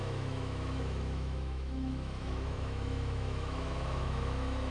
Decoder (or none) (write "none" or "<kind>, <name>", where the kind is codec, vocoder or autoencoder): autoencoder, DAC-VAE